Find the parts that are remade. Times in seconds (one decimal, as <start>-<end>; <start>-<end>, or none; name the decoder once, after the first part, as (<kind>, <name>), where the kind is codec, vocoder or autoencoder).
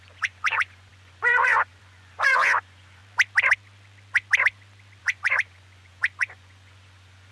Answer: 0.0-3.0 (vocoder, Vocos); 5.0-7.3